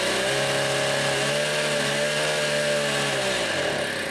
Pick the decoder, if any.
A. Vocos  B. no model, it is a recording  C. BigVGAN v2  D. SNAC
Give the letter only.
B